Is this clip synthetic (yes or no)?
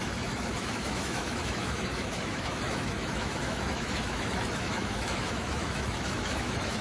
yes